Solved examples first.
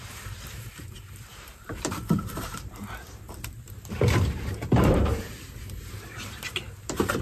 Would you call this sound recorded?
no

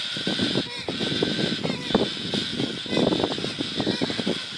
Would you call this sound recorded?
yes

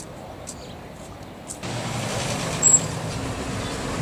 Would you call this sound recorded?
no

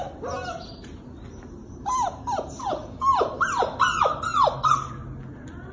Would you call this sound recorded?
yes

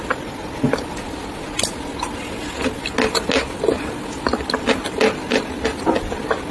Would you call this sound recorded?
yes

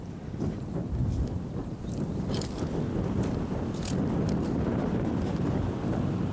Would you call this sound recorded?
no